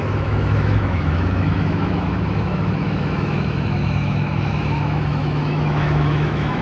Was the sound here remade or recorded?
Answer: remade